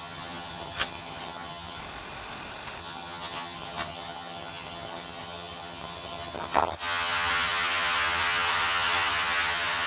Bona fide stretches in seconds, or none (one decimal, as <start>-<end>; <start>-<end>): 1.8-2.8